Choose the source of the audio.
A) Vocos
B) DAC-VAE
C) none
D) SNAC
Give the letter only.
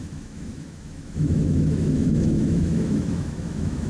B